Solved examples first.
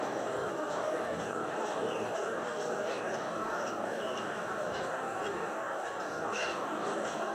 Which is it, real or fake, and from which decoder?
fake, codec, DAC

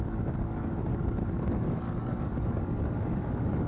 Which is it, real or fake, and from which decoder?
fake, codec, DAC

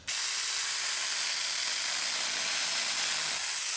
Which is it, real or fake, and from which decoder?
real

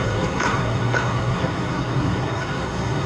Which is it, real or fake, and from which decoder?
fake, codec, SNAC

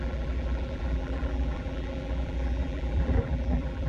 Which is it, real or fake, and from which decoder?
fake, vocoder, BigVGAN v2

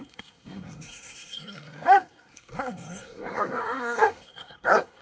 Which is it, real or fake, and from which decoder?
fake, codec, SNAC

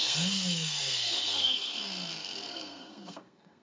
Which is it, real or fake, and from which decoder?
fake, codec, SNAC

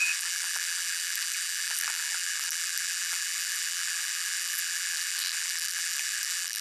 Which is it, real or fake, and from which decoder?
fake, vocoder, BigVGAN v2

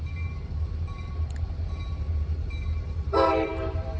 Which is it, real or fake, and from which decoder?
fake, vocoder, BigVGAN v2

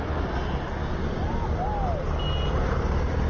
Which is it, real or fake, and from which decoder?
real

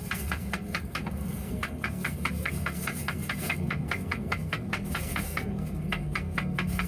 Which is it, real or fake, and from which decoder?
fake, codec, SNAC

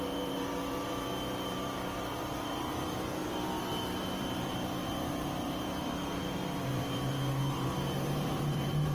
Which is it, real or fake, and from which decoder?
fake, vocoder, BigVGAN v2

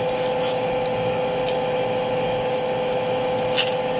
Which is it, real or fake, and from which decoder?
real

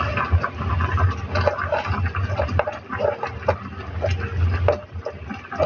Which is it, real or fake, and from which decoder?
real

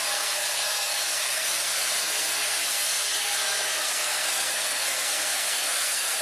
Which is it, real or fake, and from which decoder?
fake, codec, SNAC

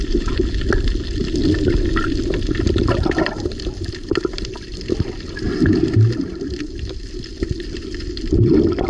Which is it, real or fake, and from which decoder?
real